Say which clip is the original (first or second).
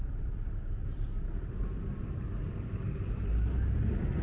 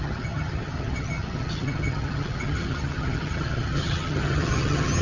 first